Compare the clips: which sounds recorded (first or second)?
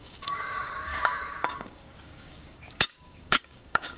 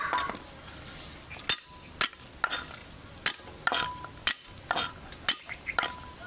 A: second